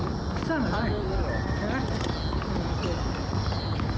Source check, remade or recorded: recorded